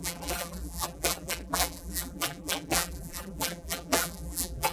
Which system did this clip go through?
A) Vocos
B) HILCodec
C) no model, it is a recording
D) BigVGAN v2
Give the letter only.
D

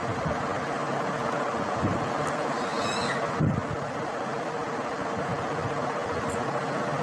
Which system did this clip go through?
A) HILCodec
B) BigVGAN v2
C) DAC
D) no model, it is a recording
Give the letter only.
D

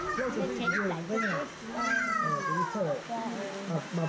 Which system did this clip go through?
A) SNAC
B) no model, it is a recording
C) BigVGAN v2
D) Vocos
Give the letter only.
B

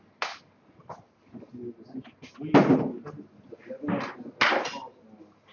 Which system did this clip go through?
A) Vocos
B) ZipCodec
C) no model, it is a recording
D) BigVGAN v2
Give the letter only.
C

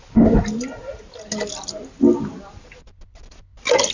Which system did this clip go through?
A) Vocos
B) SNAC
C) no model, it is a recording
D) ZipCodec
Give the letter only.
C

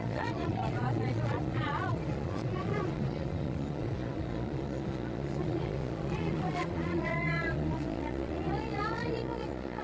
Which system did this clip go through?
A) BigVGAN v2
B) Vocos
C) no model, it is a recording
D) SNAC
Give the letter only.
B